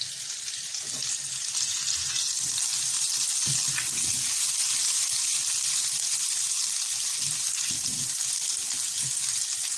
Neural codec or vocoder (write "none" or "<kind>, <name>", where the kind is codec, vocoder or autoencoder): none